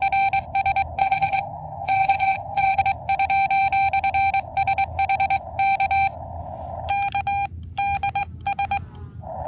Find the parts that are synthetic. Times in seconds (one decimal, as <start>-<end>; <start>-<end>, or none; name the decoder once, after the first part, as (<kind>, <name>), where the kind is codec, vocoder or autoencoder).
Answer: 1.0-2.8 (vocoder, HiFi-GAN)